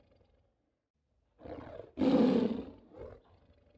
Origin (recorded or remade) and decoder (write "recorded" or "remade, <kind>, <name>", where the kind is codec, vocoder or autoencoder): recorded